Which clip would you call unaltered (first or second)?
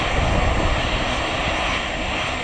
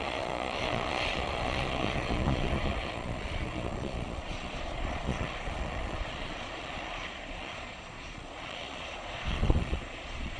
first